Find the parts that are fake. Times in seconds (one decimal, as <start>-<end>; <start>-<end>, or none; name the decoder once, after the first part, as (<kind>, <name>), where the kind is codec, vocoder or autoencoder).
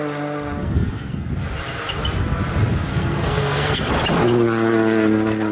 0.6-1.3 (codec, SNAC); 2.9-3.9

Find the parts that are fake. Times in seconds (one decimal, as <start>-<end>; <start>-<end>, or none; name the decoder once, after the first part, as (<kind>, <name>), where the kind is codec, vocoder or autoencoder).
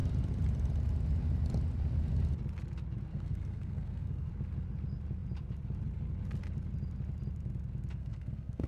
3.1-4.3 (codec, SNAC); 8.0-8.7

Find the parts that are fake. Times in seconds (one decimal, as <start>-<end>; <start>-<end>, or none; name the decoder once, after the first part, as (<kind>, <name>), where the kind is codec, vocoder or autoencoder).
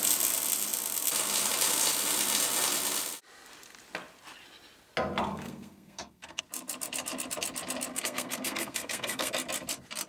5.3-6.4 (codec, SNAC); 7.9-9.3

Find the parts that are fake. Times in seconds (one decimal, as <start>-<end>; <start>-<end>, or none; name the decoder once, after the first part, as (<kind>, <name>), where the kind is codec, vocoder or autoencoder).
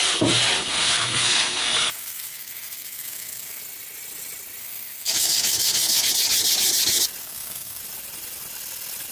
0.6-3.6 (codec, SNAC); 4.6-6.1; 7.2-7.8